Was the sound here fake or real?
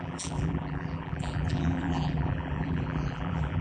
fake